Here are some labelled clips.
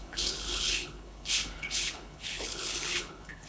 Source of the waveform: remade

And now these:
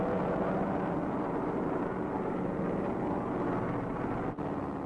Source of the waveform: recorded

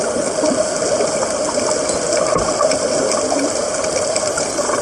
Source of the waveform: recorded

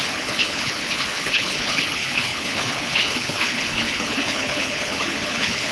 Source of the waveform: remade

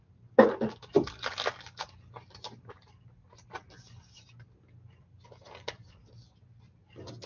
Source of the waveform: recorded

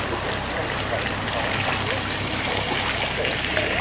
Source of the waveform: recorded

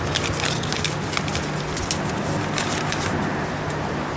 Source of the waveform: recorded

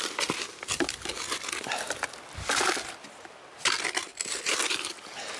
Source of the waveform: recorded